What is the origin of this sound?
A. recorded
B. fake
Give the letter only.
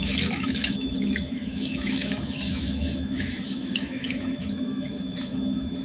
B